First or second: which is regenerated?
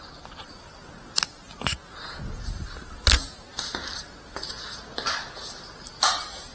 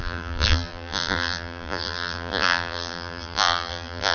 second